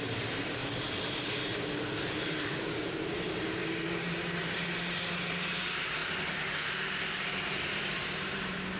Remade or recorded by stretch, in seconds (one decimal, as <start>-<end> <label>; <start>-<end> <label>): 0.0-0.6 remade; 0.6-2.0 recorded; 2.0-3.6 remade; 3.6-5.2 recorded; 5.2-6.0 remade; 6.0-6.7 recorded; 6.7-8.8 remade

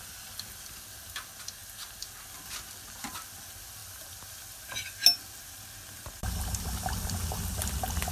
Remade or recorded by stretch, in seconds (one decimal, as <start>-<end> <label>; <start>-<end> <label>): 0.0-8.1 recorded

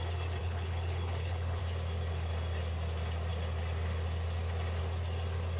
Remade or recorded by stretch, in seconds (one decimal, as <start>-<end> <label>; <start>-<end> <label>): 0.0-0.4 recorded; 0.4-1.6 remade; 1.6-5.6 recorded

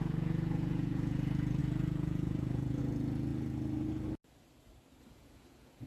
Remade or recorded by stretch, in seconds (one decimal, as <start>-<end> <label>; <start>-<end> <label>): 0.0-3.3 remade; 3.3-5.0 recorded; 5.0-5.9 remade

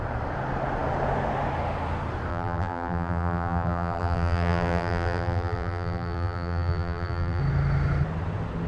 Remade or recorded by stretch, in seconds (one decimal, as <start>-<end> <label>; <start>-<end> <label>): 0.0-2.3 recorded; 2.3-7.4 remade; 7.4-8.7 recorded

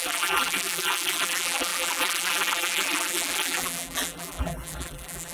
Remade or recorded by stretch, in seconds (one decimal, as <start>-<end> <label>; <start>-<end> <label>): 0.0-5.3 remade

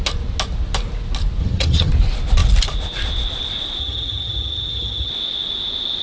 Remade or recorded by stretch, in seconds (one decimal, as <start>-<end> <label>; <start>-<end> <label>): 0.0-1.4 recorded; 1.4-1.9 remade; 1.9-3.8 recorded; 3.8-5.1 remade; 5.1-6.0 recorded

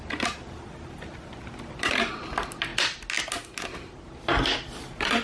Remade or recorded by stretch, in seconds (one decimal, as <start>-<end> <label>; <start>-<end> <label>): 0.0-5.2 recorded